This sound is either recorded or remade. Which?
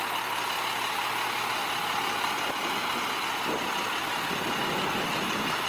recorded